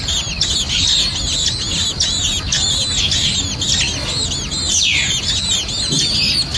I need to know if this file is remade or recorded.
recorded